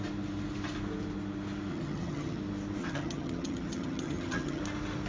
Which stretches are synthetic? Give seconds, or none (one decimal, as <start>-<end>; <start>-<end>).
1.7-2.4; 2.8-4.6